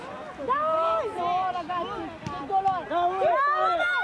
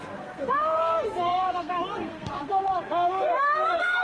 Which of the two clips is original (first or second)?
first